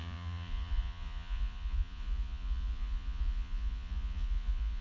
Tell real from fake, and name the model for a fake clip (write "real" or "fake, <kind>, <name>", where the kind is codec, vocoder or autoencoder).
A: fake, vocoder, Vocos